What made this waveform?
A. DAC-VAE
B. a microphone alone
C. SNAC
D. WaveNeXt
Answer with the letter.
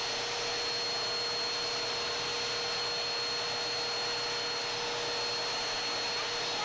B